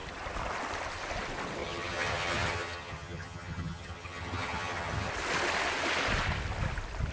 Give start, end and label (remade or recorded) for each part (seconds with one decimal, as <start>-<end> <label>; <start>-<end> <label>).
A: 0.0-1.6 recorded; 1.6-5.1 remade; 5.1-7.1 recorded